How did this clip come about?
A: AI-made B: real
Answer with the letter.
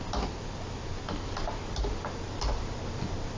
B